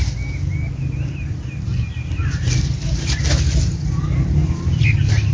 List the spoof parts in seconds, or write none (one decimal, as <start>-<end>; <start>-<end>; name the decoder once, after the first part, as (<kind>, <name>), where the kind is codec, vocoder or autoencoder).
none